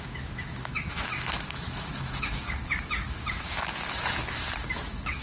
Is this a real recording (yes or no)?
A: no